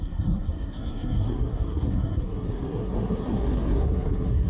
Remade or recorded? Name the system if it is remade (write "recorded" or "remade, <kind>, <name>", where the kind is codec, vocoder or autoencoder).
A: remade, codec, SNAC